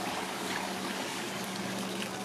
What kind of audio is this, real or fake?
fake